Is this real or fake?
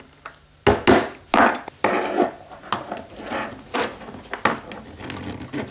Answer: real